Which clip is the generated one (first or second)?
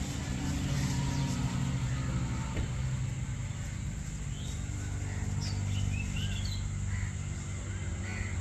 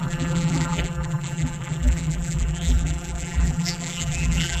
second